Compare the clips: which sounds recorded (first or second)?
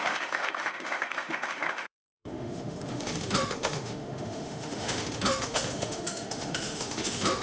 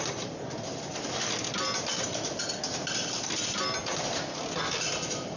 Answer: second